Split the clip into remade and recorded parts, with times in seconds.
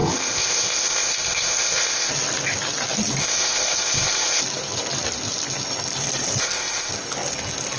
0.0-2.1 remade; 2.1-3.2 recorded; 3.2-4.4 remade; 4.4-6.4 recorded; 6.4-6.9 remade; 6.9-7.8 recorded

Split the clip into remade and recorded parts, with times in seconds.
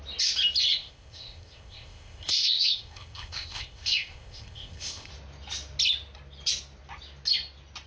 0.0-0.7 recorded; 0.7-5.1 remade; 5.1-7.9 recorded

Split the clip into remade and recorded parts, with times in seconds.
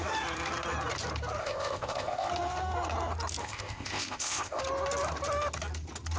0.0-1.4 recorded; 1.4-2.3 remade; 2.3-3.4 recorded; 3.4-4.6 remade; 4.6-6.2 recorded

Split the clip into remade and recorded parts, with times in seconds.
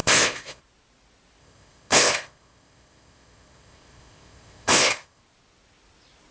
0.0-0.6 remade; 0.6-1.4 recorded; 1.4-5.2 remade; 5.2-6.3 recorded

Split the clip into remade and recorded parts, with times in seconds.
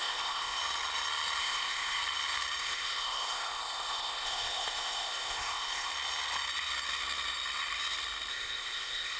0.0-0.6 remade; 0.6-1.4 recorded; 1.4-2.0 remade; 2.0-2.6 recorded; 2.6-5.9 remade; 5.9-8.3 recorded; 8.3-9.2 remade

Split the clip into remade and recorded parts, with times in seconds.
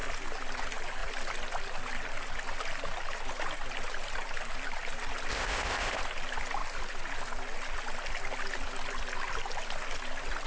0.0-5.3 recorded; 5.3-6.0 remade; 6.0-10.5 recorded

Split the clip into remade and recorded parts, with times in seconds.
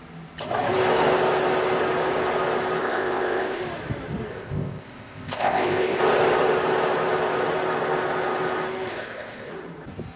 0.0-2.8 recorded; 2.8-3.6 remade; 3.6-4.3 recorded; 4.3-6.0 remade; 6.0-8.9 recorded; 8.9-9.5 remade; 9.5-10.2 recorded